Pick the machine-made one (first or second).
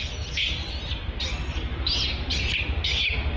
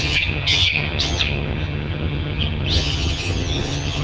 second